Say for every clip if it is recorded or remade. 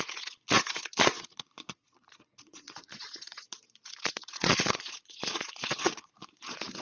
remade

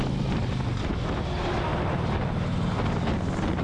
recorded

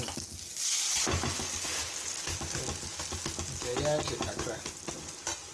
recorded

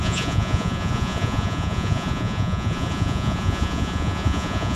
remade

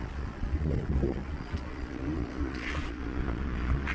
remade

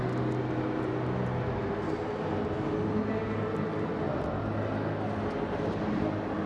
recorded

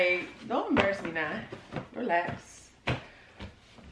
recorded